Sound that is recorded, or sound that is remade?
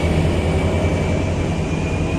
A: recorded